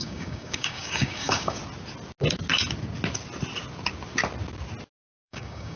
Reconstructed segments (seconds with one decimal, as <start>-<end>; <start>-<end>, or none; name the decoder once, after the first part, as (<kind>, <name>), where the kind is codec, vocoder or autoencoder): 0.0-1.6 (codec, DAC); 5.1-5.8